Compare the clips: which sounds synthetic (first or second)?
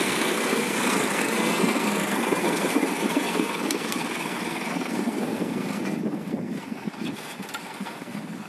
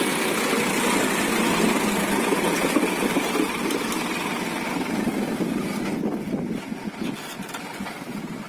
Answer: first